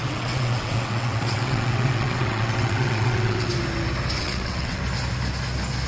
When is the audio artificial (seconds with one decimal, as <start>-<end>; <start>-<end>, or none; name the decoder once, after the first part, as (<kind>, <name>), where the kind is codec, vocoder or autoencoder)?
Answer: 0.0-3.5 (vocoder, WaveNeXt); 4.2-4.8